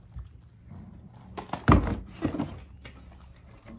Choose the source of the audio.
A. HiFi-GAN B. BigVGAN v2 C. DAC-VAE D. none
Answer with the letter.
D